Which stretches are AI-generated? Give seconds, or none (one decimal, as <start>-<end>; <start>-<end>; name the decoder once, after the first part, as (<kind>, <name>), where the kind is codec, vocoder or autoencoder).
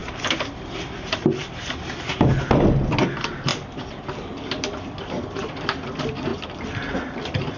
2.3-6.3 (vocoder, BigVGAN v2); 7.0-7.6